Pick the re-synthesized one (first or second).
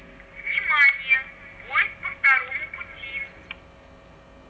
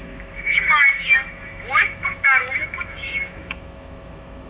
second